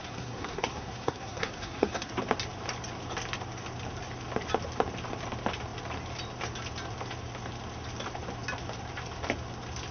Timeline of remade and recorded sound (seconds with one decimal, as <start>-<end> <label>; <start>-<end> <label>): 0.0-2.1 remade; 2.1-9.9 recorded